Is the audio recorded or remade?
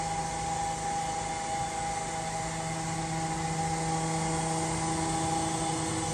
recorded